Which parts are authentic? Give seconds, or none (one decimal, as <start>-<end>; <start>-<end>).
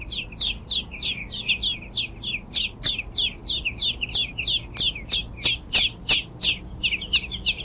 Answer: 0.0-7.6